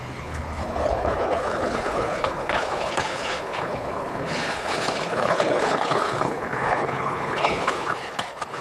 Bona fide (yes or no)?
no